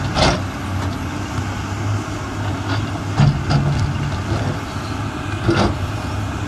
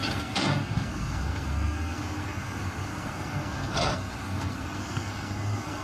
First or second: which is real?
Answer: first